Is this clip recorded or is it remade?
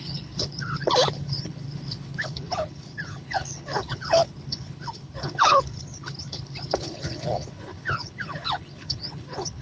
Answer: remade